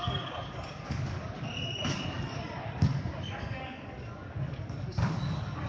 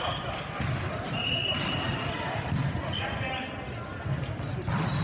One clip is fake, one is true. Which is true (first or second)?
second